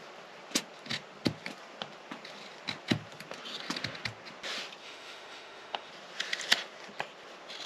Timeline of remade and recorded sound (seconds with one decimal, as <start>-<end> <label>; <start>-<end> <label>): 0.0-4.8 recorded; 4.8-5.9 remade; 5.9-7.7 recorded